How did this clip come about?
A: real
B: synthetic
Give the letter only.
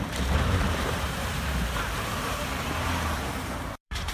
B